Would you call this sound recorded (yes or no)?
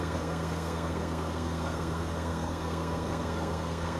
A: no